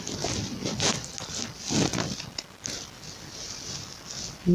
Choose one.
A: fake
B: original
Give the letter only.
B